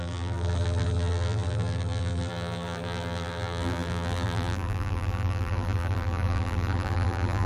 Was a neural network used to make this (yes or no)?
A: yes